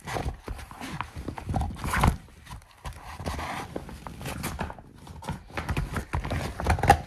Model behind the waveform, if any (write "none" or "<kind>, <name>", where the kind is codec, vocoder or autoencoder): none